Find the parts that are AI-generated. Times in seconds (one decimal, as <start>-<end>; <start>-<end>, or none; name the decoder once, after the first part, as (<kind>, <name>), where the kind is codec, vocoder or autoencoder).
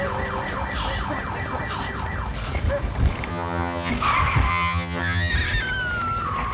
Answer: 3.3-3.9 (vocoder, HiFi-GAN); 4.5-5.3